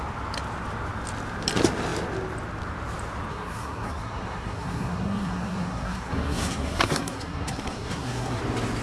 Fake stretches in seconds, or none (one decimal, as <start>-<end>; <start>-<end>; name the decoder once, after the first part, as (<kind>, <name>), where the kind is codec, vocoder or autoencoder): 3.3-8.4 (codec, SNAC)